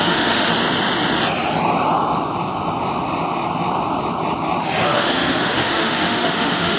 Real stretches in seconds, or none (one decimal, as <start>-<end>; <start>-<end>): 0.5-4.6